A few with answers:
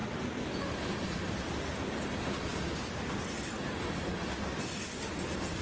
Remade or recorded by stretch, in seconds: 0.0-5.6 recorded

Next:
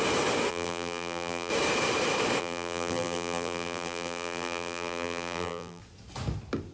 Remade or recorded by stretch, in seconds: 0.0-0.5 recorded; 0.5-1.5 remade; 1.5-2.4 recorded; 2.4-5.8 remade; 5.8-6.7 recorded

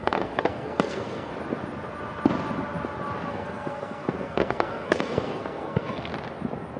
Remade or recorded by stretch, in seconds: 0.0-1.3 remade; 1.3-3.3 recorded; 3.3-6.1 remade; 6.1-6.8 recorded

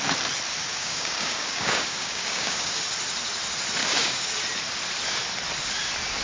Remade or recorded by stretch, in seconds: 0.0-0.6 recorded; 0.6-2.8 remade; 2.8-3.8 recorded; 3.8-4.3 remade; 4.3-6.2 recorded

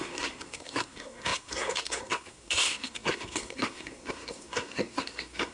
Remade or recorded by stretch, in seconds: 0.0-5.5 remade

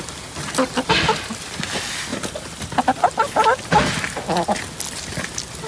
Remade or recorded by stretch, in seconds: 0.0-5.7 recorded